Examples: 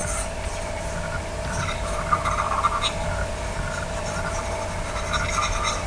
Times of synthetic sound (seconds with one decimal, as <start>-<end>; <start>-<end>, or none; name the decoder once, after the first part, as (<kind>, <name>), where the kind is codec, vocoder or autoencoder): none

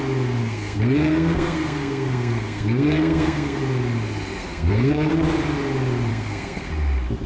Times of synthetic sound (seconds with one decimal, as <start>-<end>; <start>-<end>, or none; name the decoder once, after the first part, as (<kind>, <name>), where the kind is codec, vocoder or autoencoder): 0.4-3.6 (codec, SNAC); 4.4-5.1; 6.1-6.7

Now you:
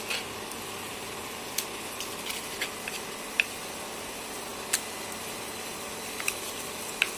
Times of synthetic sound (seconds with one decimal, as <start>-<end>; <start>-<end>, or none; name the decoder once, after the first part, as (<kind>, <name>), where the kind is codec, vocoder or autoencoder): none